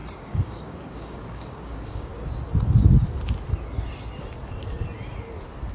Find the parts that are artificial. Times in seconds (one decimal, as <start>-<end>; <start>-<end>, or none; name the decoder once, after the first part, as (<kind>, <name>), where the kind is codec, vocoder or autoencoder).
0.0-2.1 (codec, DAC)